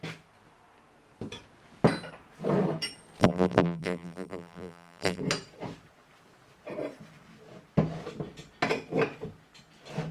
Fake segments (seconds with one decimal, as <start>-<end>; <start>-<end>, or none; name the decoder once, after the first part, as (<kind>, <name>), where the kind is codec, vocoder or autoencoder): 3.2-5.2 (vocoder, BigVGAN v2)